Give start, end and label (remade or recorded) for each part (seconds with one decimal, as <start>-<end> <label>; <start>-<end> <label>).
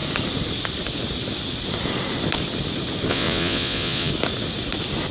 0.0-3.1 recorded; 3.1-4.1 remade; 4.1-5.1 recorded